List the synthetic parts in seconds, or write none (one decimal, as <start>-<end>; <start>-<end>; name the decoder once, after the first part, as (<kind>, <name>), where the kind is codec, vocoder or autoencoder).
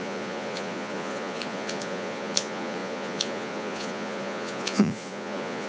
0.0-5.7 (vocoder, Vocos)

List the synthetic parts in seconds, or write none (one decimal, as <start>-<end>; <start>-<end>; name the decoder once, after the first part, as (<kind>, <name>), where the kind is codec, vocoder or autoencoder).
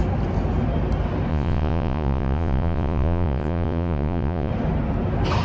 1.3-4.5 (vocoder, Vocos)